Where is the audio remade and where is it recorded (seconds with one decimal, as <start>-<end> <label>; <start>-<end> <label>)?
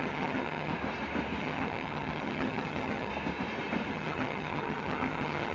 0.0-0.7 remade; 0.7-1.4 recorded; 1.4-3.1 remade; 3.1-3.9 recorded; 3.9-5.5 remade